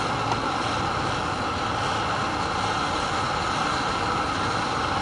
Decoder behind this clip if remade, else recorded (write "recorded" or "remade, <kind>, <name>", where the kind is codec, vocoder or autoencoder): recorded